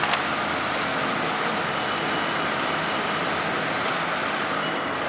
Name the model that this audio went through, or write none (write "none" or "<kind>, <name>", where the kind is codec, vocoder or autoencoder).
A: none